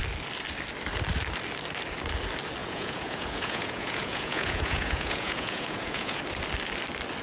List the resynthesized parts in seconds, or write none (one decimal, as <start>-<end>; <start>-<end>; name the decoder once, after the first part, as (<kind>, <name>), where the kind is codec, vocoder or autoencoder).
2.6-6.2 (vocoder, Vocos)